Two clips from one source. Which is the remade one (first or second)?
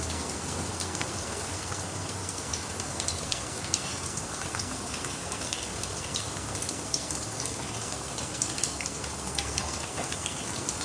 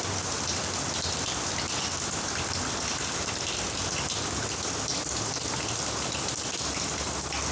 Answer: first